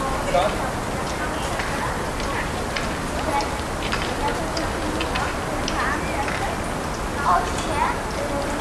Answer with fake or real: real